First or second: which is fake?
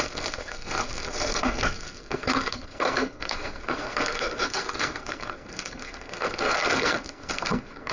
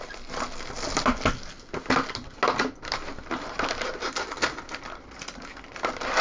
first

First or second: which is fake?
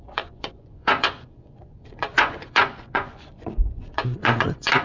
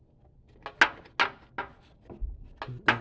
first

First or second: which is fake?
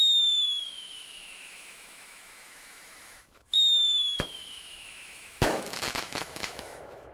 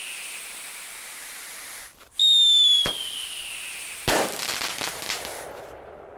first